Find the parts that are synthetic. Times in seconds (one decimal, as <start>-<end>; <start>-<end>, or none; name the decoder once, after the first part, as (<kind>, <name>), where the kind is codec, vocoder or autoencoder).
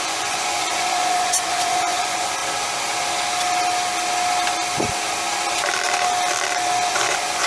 0.0-2.4 (vocoder, Vocos); 6.9-7.5